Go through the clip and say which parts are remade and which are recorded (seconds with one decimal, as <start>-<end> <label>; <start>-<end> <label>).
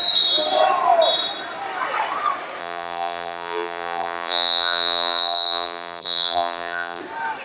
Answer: 0.0-2.6 recorded; 2.6-7.0 remade; 7.0-7.4 recorded